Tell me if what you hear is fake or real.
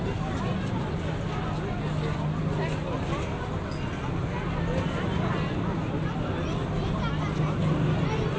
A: real